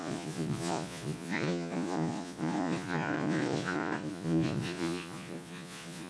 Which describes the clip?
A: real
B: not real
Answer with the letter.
B